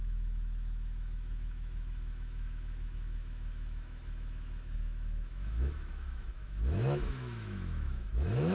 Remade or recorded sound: remade